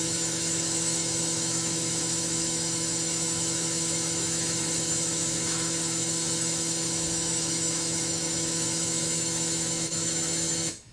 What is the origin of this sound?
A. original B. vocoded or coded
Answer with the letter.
B